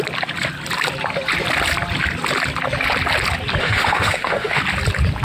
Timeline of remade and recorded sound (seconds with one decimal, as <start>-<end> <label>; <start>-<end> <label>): 0.0-3.6 recorded; 3.6-4.6 remade; 4.6-5.2 recorded